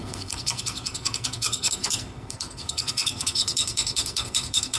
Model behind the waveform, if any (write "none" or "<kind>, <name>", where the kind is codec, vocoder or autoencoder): codec, SNAC